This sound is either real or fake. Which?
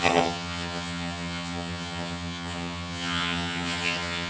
fake